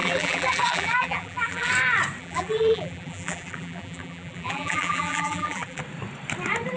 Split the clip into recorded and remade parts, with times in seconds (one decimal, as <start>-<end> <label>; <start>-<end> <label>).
0.0-1.7 remade; 1.7-2.2 recorded; 2.2-5.8 remade; 5.8-6.8 recorded